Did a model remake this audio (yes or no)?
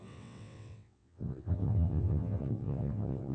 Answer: yes